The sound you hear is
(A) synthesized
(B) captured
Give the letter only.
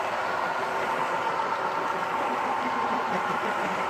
B